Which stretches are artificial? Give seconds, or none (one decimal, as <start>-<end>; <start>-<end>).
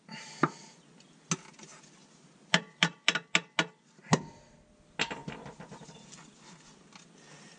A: none